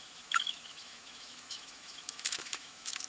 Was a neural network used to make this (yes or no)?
yes